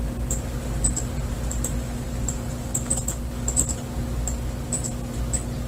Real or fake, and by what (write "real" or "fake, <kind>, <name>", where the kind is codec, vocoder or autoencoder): fake, vocoder, BigVGAN v2